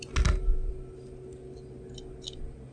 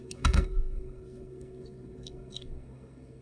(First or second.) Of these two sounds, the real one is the first